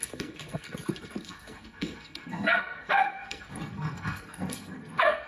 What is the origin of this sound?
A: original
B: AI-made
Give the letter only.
B